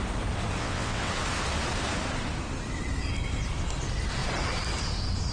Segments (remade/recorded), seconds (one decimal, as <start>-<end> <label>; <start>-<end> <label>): 0.0-0.6 recorded; 0.6-1.1 remade; 1.1-5.3 recorded